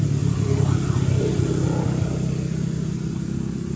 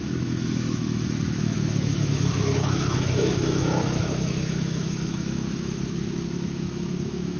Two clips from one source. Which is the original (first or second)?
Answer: first